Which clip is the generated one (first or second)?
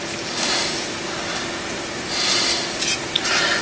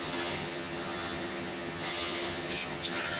second